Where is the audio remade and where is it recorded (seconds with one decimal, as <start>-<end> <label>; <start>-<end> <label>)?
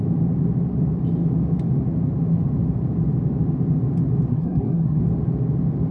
0.0-4.3 recorded; 4.3-5.0 remade; 5.0-5.9 recorded